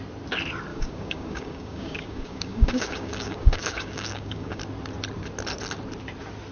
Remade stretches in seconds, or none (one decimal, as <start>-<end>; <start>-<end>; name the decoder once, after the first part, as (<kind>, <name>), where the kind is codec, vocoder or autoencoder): 0.7-4.6 (codec, DAC)